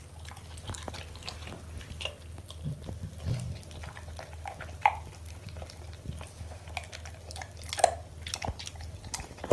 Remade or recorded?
recorded